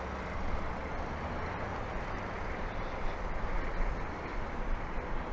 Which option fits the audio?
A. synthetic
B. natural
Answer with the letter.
B